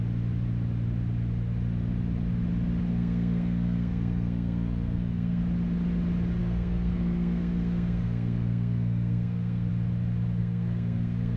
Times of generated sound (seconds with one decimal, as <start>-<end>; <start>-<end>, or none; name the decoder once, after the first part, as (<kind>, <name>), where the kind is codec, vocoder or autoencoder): 2.9-5.4 (codec, SNAC); 6.4-9.7; 10.4-11.4